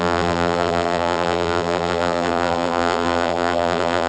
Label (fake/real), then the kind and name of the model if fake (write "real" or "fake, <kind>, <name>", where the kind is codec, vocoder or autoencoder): fake, vocoder, BigVGAN v2